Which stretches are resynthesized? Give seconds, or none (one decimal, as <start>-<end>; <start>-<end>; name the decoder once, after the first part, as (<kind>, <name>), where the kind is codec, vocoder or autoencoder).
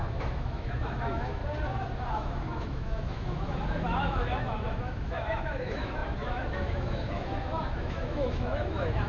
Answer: 0.0-1.4 (autoencoder, DAC-VAE); 2.1-9.1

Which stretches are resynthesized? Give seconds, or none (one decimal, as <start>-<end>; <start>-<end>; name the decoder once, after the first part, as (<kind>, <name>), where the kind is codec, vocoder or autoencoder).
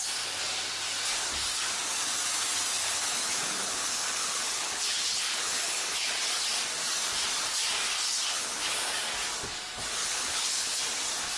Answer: 2.8-6.1 (codec, HILCodec); 7.9-8.9; 10.0-10.8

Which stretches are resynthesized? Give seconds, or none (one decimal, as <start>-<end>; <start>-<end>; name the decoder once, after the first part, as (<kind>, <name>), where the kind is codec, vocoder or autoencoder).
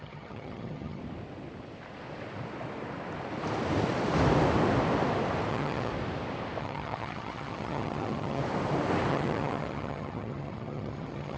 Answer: 0.0-1.0 (vocoder, HiFi-GAN); 5.5-5.9; 6.6-8.4; 9.1-11.4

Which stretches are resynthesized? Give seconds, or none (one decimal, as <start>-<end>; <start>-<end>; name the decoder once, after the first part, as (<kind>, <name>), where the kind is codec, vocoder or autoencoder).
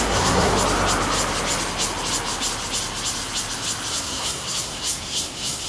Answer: 0.0-0.5 (codec, SNAC); 3.9-5.7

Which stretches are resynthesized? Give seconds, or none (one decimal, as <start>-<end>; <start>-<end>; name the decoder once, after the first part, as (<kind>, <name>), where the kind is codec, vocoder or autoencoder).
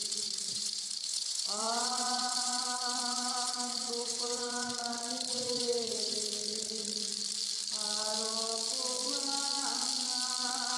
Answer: 0.0-4.7 (vocoder, Vocos); 5.3-6.3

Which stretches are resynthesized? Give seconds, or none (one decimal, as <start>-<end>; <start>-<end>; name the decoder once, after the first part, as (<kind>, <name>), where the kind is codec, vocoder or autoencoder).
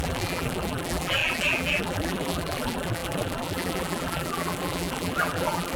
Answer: 0.0-5.8 (vocoder, BigVGAN v2)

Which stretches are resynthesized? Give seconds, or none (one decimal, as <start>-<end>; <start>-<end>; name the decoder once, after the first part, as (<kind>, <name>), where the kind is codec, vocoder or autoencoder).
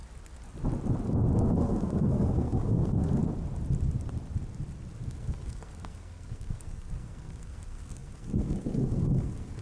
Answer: 1.4-3.2 (codec, SNAC); 5.1-9.6